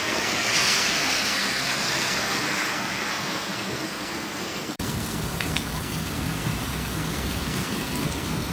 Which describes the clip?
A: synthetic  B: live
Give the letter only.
A